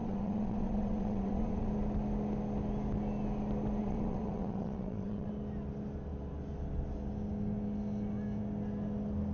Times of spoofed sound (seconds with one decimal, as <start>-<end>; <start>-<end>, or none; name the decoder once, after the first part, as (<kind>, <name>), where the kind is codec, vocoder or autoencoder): 0.0-1.7 (vocoder, WaveNeXt); 3.8-5.3

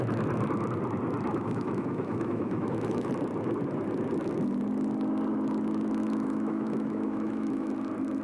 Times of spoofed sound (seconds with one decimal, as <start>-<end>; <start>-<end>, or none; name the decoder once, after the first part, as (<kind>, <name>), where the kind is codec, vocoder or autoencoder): 1.3-3.1 (autoencoder, DAC-VAE); 6.0-7.7

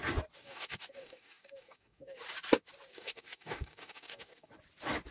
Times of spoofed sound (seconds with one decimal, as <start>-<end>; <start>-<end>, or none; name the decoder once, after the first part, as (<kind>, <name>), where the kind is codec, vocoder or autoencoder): 0.4-2.2 (codec, DAC); 2.9-4.5

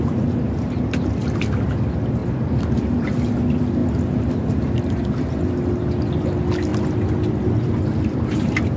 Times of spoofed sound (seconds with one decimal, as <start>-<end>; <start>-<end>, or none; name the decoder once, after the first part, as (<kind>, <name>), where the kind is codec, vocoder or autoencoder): 2.2-2.7 (vocoder, BigVGAN v2)

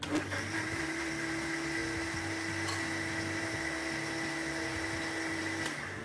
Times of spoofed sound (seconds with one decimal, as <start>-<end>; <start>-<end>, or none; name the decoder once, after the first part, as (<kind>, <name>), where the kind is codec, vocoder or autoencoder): none